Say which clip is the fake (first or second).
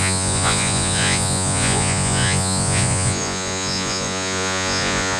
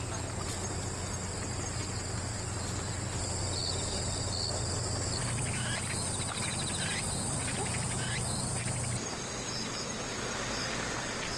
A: first